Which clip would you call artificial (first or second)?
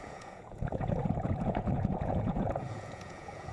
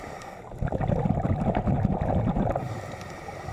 first